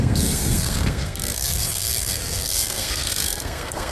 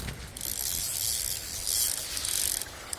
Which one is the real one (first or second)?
second